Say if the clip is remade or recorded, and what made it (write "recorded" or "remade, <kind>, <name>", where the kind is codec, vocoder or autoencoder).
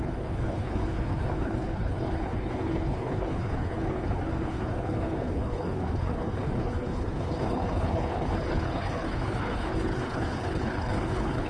remade, codec, HILCodec